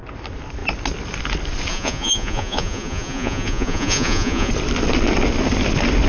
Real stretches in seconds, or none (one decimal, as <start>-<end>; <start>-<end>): 0.0-1.7; 4.5-6.1